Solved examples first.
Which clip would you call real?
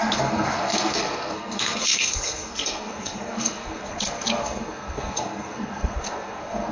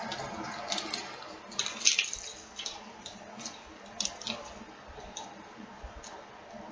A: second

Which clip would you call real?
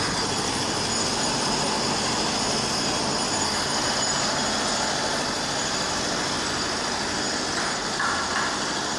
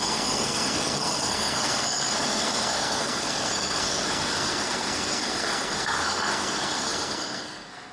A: first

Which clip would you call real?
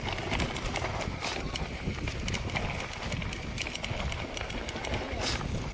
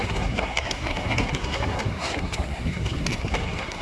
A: first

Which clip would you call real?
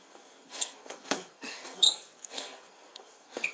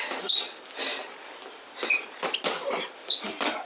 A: second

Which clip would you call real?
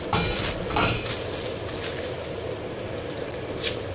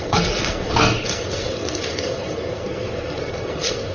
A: first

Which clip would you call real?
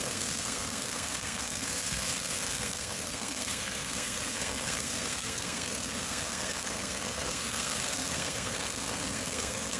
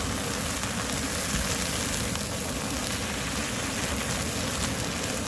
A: second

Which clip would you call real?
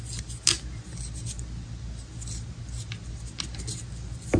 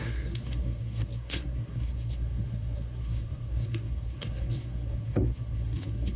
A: first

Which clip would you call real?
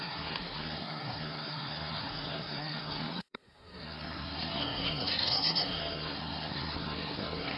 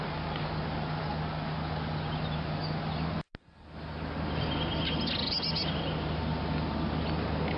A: second